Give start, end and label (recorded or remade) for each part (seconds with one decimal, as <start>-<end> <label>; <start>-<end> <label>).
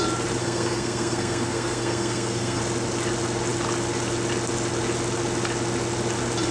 0.0-0.4 recorded; 0.4-2.6 remade; 2.6-6.5 recorded